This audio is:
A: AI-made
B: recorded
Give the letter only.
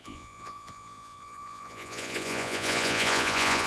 A